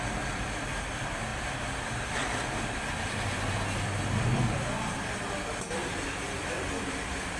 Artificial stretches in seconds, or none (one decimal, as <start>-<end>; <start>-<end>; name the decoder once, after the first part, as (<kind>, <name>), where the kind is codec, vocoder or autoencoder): none